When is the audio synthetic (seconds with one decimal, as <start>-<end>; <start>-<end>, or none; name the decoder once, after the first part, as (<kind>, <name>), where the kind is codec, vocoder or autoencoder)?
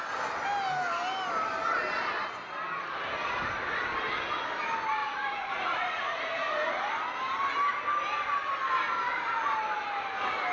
5.0-6.9 (vocoder, Vocos)